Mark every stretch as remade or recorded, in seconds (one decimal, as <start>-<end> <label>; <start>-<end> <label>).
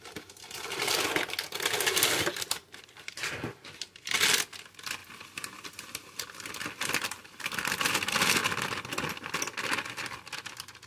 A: 0.0-2.3 recorded; 2.3-3.2 remade; 3.2-5.0 recorded; 5.0-7.9 remade; 7.9-10.9 recorded